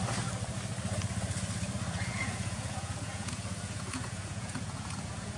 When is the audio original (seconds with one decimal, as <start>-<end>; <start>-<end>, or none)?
0.0-2.1